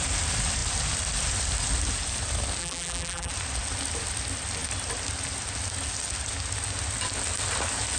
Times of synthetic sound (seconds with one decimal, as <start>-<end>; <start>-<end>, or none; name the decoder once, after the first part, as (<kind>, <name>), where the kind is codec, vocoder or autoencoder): 2.6-3.3 (vocoder, BigVGAN v2)